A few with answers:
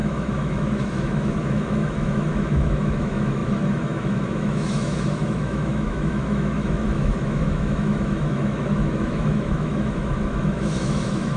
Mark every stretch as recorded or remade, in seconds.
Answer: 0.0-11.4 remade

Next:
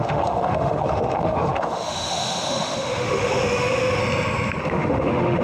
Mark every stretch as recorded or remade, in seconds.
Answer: 0.0-4.0 remade; 4.0-4.6 recorded; 4.6-5.4 remade

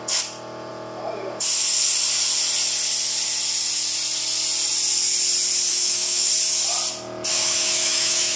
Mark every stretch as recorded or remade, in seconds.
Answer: 0.0-5.7 recorded; 5.7-6.3 remade; 6.3-7.3 recorded; 7.3-8.4 remade

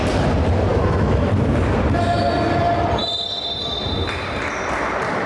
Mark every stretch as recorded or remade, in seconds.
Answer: 0.0-0.7 recorded; 0.7-1.3 remade; 1.3-5.3 recorded

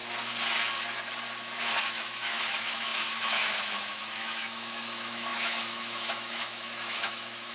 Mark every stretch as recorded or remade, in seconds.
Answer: 0.0-1.8 recorded; 1.8-7.5 remade

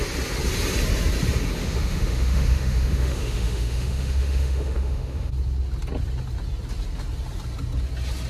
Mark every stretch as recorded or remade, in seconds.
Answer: 0.0-1.6 recorded; 1.6-5.3 remade; 5.3-8.3 recorded

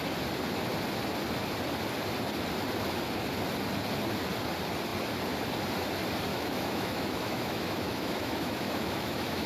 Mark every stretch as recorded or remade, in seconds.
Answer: 0.0-6.3 recorded; 6.3-9.5 remade